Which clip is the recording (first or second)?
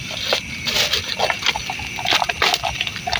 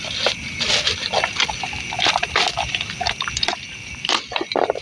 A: first